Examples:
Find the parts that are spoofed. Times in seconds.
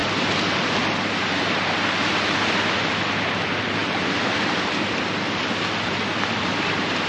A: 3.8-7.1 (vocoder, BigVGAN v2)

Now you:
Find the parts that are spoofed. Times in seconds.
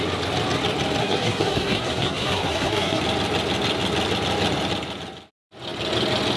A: 1.0-3.0 (codec, SNAC)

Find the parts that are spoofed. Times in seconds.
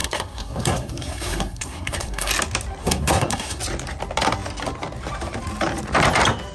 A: 0.0-2.3 (codec, SNAC); 2.8-3.6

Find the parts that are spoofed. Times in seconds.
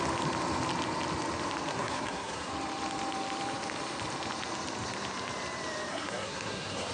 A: 1.7-2.5 (codec, SNAC); 5.9-6.9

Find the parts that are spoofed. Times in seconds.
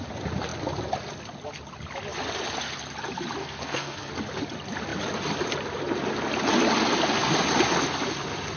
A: 3.4-4.1 (codec, SNAC)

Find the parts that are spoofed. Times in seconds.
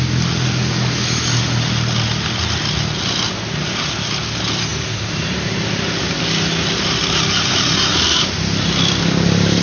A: none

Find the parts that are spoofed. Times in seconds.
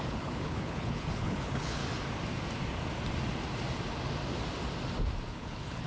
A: 0.0-1.8 (codec, HILCodec); 5.3-5.9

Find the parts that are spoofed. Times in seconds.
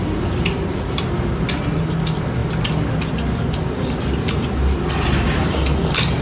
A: none